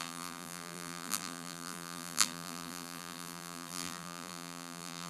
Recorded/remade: remade